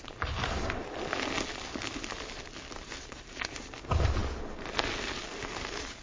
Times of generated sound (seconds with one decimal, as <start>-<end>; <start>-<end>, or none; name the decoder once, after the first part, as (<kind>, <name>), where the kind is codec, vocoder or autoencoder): none